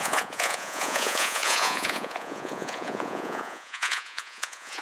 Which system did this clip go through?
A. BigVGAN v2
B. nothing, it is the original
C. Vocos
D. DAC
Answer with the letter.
C